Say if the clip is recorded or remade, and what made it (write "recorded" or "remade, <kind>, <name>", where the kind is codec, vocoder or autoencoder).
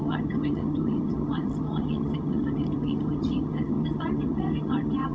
remade, vocoder, HiFi-GAN